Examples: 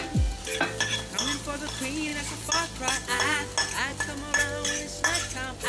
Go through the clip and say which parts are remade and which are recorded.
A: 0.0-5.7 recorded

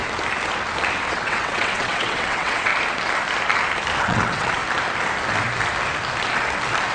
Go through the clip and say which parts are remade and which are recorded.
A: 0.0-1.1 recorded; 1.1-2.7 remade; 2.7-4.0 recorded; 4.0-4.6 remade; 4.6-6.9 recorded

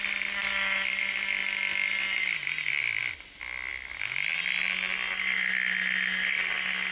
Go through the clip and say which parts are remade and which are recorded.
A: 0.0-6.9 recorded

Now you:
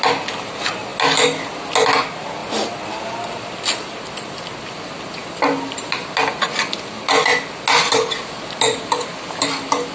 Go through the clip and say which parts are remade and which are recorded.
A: 0.0-9.9 recorded

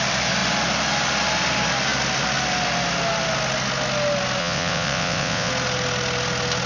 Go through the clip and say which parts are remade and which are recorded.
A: 0.0-4.4 recorded; 4.4-5.5 remade; 5.5-6.7 recorded